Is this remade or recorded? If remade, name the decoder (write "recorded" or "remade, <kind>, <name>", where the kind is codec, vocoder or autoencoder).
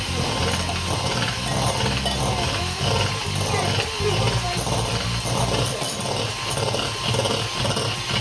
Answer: recorded